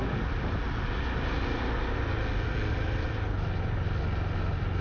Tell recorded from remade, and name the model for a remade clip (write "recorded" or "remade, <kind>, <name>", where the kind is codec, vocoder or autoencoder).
recorded